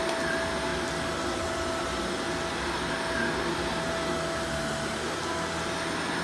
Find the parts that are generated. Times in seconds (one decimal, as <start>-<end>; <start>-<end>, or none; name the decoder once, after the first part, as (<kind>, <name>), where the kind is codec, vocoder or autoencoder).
none